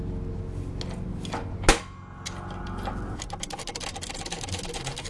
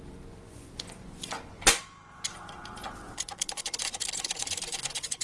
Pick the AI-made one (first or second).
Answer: second